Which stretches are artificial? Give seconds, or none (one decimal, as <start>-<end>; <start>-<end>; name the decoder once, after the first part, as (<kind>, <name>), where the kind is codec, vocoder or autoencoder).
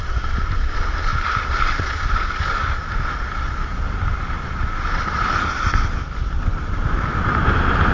1.1-3.2 (vocoder, BigVGAN v2); 3.7-4.5; 6.0-6.7